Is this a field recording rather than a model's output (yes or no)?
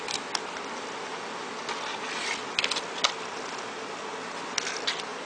yes